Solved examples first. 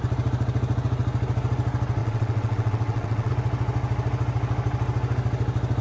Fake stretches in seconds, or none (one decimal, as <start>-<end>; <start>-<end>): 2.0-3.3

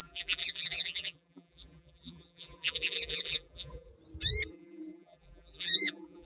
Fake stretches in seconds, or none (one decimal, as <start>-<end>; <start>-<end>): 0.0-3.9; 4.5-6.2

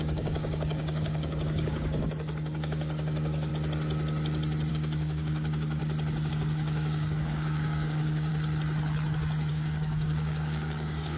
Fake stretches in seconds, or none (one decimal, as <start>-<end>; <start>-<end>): 0.0-3.5; 4.7-5.8; 6.3-8.3; 9.5-11.2